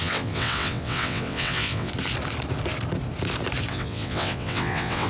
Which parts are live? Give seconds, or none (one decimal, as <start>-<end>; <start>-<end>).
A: 1.9-3.7

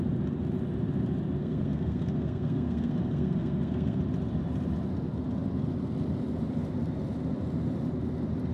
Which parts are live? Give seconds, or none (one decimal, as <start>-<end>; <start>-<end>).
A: 0.0-1.4; 4.0-8.5

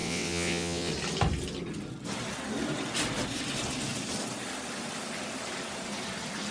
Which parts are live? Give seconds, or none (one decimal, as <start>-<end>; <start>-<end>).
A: 0.9-6.5

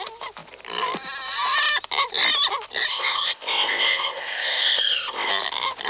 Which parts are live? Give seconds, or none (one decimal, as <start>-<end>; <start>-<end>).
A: 0.0-2.9; 5.3-5.9

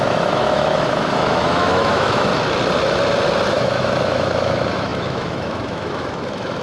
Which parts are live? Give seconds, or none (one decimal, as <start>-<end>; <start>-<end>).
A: 2.3-3.5